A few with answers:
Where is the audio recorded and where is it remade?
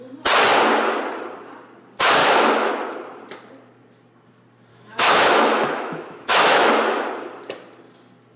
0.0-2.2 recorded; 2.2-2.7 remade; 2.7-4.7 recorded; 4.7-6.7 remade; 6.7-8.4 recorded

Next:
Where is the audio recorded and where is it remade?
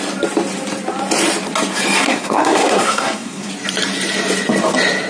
0.0-2.0 recorded; 2.0-3.5 remade; 3.5-5.1 recorded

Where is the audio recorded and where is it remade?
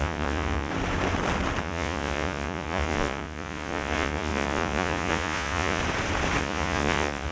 0.0-0.7 remade; 0.7-1.6 recorded; 1.6-5.8 remade; 5.8-6.4 recorded; 6.4-7.3 remade